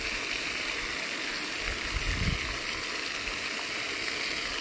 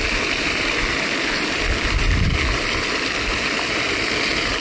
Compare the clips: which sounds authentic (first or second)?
first